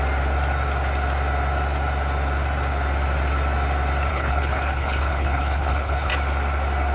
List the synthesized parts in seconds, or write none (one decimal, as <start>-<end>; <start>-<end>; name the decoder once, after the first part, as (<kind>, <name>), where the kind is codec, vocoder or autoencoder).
4.1-6.1 (codec, HILCodec)